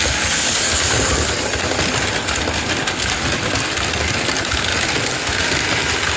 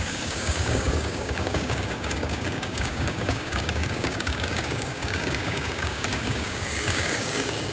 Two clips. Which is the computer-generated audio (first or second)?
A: second